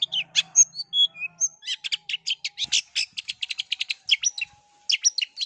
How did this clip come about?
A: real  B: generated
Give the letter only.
A